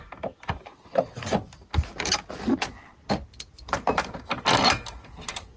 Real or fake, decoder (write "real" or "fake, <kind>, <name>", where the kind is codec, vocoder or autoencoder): real